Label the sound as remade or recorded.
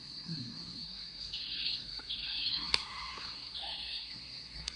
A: remade